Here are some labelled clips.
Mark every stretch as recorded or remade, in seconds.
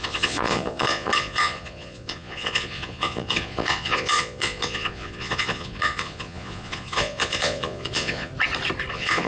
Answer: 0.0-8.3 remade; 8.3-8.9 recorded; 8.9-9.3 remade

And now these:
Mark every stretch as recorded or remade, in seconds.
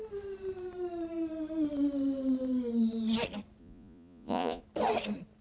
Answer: 0.0-3.6 recorded; 3.6-4.6 remade; 4.6-5.4 recorded